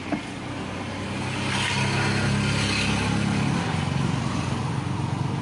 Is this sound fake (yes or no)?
no